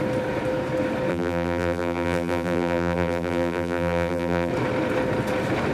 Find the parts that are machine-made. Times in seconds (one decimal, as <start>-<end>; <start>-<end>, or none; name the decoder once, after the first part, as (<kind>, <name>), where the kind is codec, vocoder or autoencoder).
1.1-4.5 (vocoder, BigVGAN v2)